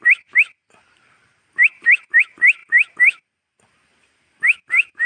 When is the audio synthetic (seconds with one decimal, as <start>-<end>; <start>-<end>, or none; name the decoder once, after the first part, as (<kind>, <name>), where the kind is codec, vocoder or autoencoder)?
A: none